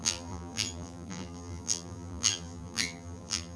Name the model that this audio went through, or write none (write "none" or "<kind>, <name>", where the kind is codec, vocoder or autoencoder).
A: vocoder, BigVGAN v2